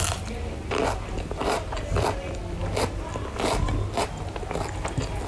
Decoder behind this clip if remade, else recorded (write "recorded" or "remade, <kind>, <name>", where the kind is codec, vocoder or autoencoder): recorded